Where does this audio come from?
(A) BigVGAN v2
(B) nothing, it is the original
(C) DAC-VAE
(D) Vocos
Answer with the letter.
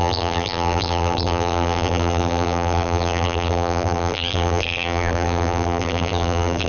A